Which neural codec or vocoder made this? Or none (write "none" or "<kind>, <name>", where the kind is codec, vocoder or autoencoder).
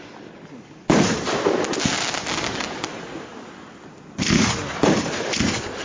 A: vocoder, BigVGAN v2